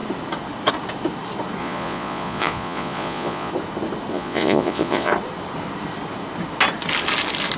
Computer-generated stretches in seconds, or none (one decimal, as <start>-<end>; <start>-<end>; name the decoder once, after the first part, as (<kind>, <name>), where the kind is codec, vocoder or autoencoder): 1.6-3.5 (vocoder, Vocos); 4.1-5.1